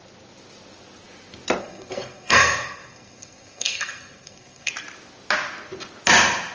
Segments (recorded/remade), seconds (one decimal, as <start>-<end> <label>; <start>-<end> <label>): 0.0-1.6 recorded; 1.6-4.7 remade; 4.7-6.5 recorded